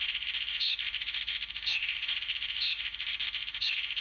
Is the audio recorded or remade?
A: remade